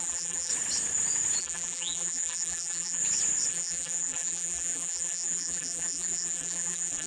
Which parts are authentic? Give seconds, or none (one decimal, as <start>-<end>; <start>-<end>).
0.5-1.4; 3.0-3.5